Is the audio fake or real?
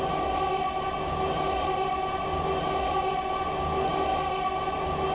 real